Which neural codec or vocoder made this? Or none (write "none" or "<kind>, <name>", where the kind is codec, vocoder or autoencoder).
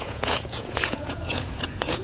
vocoder, Vocos